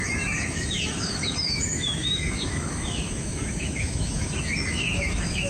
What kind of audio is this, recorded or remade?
remade